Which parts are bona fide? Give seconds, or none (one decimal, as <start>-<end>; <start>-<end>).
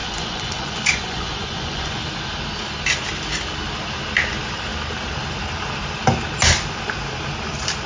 2.0-7.9